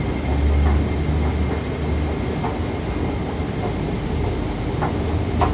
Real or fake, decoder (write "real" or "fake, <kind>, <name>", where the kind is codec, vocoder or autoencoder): real